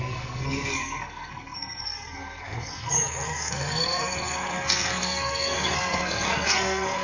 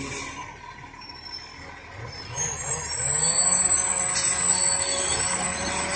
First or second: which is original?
second